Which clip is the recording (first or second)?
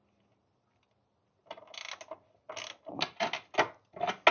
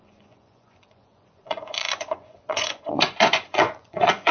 first